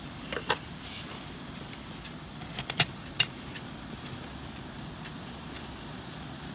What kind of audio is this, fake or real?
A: real